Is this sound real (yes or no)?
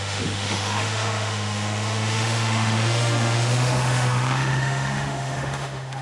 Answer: no